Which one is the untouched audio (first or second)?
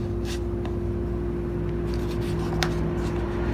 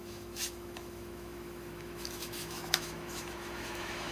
first